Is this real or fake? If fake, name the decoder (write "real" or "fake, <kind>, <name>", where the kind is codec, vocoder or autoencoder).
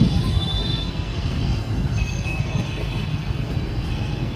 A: fake, codec, SNAC